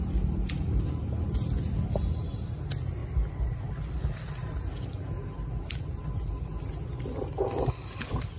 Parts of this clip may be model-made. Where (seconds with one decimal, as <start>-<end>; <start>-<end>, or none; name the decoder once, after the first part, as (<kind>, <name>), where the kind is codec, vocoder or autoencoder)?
none